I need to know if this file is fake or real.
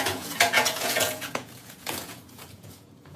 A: fake